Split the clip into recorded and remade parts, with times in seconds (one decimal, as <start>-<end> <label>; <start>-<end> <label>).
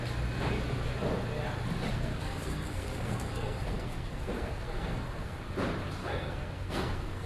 0.0-1.9 recorded; 1.9-5.4 remade; 5.4-6.0 recorded; 6.0-7.3 remade